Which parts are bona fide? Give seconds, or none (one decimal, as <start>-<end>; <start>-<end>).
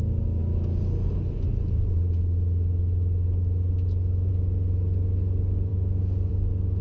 0.0-6.8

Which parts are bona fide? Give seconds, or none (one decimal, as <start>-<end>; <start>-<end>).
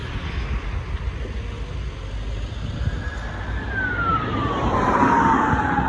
0.0-4.1; 5.0-5.9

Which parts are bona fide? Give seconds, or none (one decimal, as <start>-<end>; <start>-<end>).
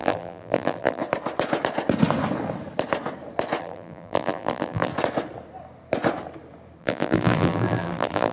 1.0-3.6; 4.9-6.8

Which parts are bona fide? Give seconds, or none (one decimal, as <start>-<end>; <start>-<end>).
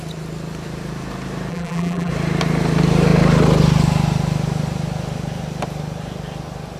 0.0-1.5; 2.1-6.8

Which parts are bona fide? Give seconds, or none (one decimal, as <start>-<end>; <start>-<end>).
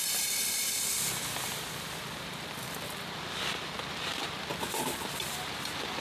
4.5-5.1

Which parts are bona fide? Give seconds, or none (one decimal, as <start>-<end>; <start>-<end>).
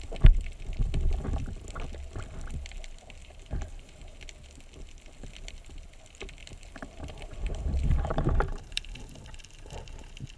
0.0-3.2; 4.2-6.4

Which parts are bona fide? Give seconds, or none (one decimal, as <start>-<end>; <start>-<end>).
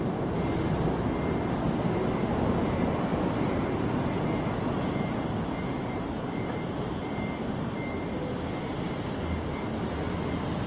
0.0-10.7